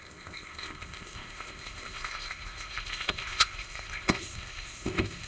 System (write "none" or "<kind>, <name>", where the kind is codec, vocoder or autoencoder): codec, ZipCodec